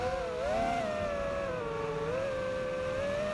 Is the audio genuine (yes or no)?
yes